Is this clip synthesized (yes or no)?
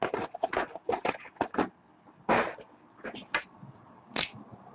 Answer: no